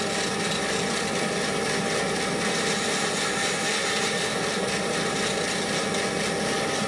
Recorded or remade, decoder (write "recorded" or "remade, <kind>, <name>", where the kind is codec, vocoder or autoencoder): recorded